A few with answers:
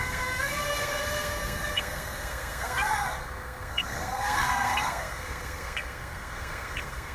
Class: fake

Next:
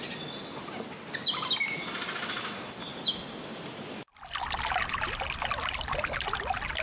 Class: real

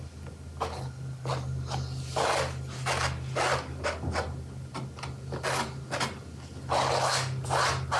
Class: real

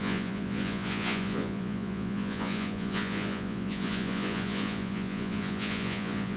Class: fake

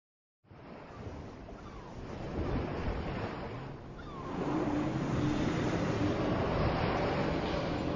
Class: real